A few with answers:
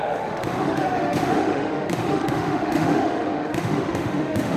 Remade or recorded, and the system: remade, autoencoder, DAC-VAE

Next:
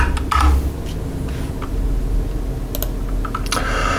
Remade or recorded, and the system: recorded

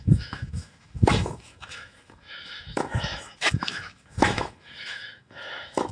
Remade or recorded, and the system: remade, autoencoder, DAC-VAE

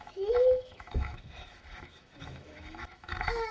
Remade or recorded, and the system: remade, autoencoder, DAC-VAE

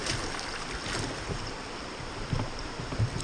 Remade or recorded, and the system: recorded